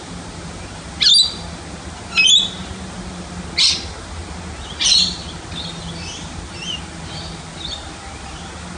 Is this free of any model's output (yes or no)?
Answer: yes